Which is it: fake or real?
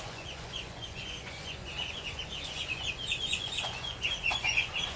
fake